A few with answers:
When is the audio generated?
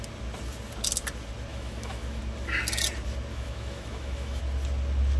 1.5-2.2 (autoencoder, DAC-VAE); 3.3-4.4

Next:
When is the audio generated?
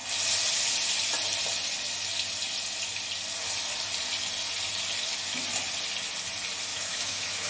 6.7-7.5 (autoencoder, DAC-VAE)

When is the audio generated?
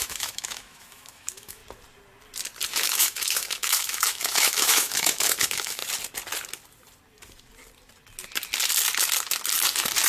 0.0-1.6 (autoencoder, DAC-VAE); 2.7-5.8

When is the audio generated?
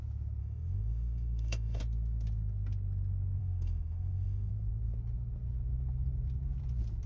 0.4-1.8 (autoencoder, DAC-VAE); 3.4-4.5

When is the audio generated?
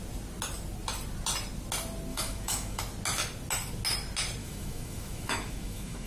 2.1-2.8 (autoencoder, DAC-VAE); 4.4-6.1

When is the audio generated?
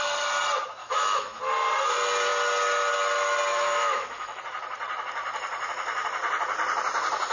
0.8-1.4 (autoencoder, DAC-VAE); 3.5-4.4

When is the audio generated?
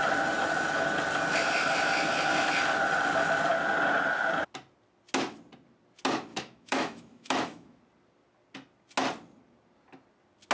6.3-7.8 (autoencoder, DAC-VAE)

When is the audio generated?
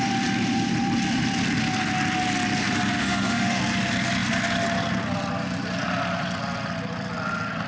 3.0-3.6 (autoencoder, DAC-VAE)